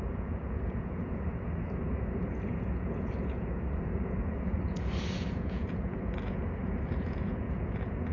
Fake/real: fake